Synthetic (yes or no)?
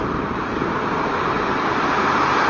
yes